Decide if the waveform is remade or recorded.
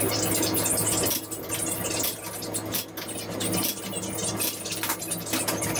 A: recorded